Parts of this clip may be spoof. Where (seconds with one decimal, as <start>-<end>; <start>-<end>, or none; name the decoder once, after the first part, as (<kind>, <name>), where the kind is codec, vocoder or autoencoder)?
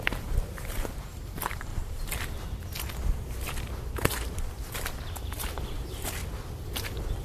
0.0-1.7 (vocoder, BigVGAN v2); 5.4-6.2